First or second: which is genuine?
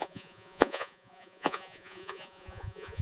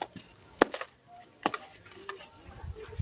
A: second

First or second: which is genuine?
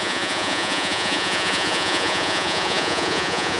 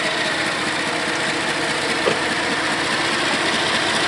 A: second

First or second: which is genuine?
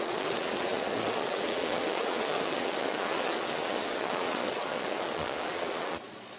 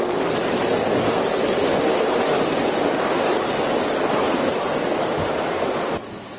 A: second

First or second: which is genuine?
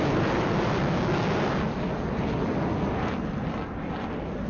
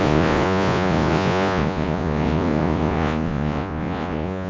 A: first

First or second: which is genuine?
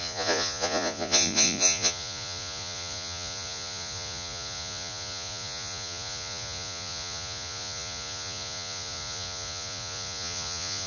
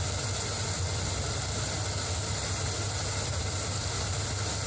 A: second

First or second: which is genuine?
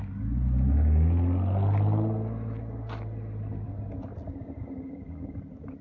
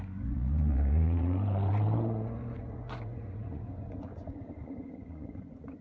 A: first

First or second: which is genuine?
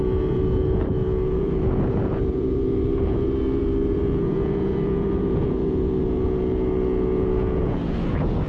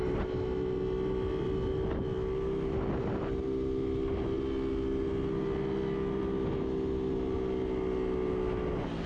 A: second